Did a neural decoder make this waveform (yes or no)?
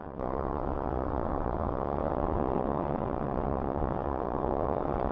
yes